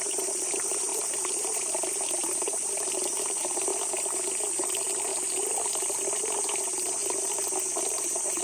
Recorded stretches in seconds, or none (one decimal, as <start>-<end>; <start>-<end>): 3.7-4.5; 5.1-6.6; 7.0-7.8